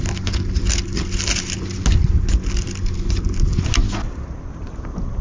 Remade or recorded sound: recorded